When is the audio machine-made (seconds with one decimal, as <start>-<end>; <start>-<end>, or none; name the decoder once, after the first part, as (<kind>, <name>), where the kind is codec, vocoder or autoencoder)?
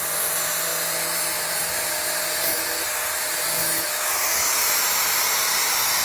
3.6-4.5 (autoencoder, DAC-VAE)